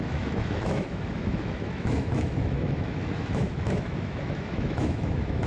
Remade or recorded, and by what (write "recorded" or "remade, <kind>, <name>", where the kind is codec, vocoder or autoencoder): remade, autoencoder, DAC-VAE